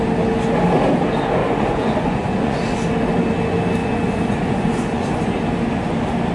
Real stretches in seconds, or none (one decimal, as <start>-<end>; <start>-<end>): 0.0-1.4; 2.6-3.8; 5.2-6.3